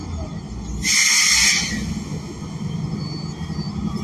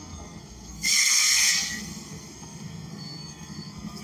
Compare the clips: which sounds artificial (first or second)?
second